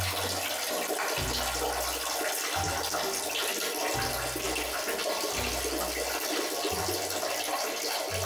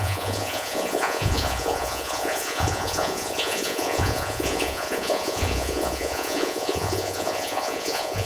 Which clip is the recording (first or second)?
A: first